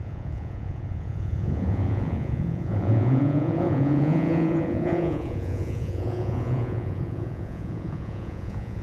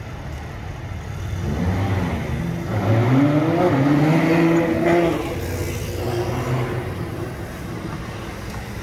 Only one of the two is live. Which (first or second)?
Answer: second